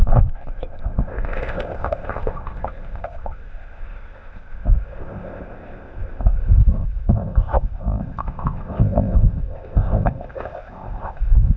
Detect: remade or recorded remade